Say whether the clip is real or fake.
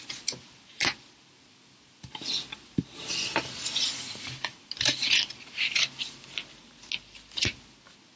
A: real